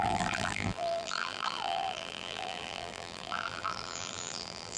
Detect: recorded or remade remade